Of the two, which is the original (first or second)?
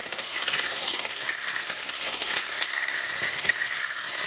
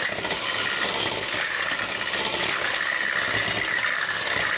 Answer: second